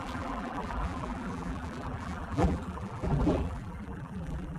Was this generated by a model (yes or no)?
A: yes